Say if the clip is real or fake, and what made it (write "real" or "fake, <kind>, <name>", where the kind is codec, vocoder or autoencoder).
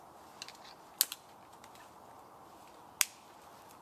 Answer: real